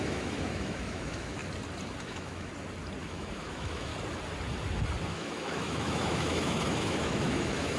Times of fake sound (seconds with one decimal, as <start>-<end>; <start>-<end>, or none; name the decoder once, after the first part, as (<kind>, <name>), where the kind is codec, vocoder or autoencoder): 0.0-1.4 (autoencoder, DAC-VAE); 2.0-2.5; 3.0-3.9; 5.1-7.8